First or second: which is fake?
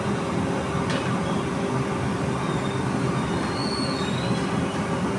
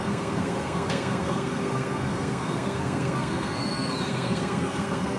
second